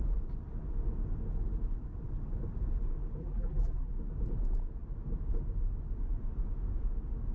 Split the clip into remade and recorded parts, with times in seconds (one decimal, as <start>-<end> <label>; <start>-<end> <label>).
0.0-3.2 recorded; 3.2-3.9 remade; 3.9-7.3 recorded